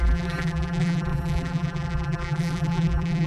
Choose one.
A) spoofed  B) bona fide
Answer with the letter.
A